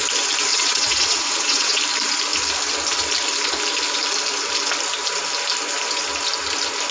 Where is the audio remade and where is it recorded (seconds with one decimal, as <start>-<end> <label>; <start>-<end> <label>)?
0.0-0.5 recorded; 0.5-1.8 remade; 1.8-6.9 recorded